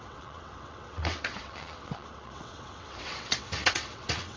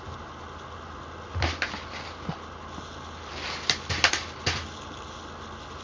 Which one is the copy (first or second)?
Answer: first